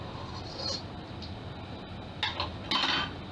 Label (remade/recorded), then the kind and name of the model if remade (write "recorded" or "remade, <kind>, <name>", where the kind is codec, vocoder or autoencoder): recorded